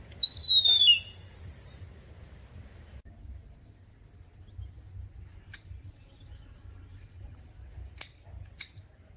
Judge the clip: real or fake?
real